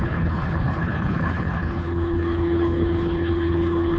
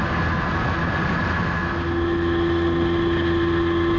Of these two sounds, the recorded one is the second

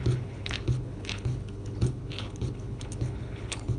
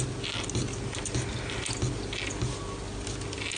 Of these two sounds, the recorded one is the second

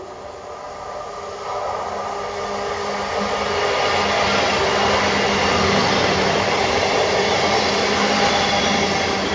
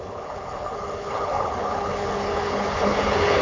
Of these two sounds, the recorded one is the first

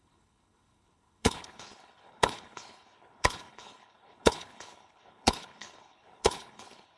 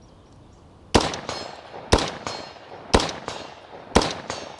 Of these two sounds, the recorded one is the second